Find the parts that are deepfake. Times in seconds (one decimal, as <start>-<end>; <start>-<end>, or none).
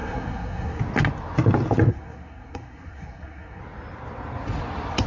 0.0-0.8; 1.9-3.6